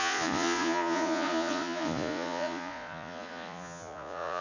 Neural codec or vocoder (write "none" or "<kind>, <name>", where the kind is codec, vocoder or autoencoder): vocoder, Vocos